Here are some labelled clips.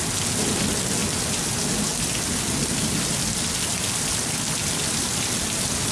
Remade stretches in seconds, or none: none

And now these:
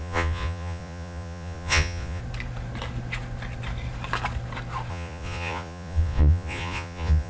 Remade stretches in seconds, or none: 0.0-2.2 (vocoder, Vocos); 4.9-7.3

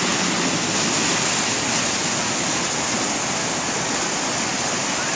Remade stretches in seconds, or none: 4.5-5.2 (vocoder, BigVGAN v2)